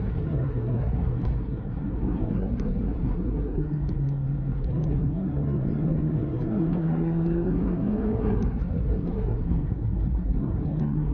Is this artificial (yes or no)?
yes